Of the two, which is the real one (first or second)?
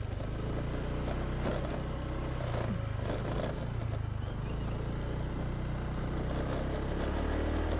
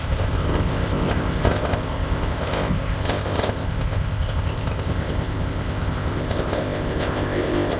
first